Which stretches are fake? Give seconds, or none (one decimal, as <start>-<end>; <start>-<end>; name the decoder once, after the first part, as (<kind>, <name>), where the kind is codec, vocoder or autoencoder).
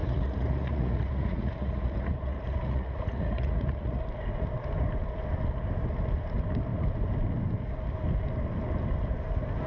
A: 0.0-4.0 (vocoder, Vocos)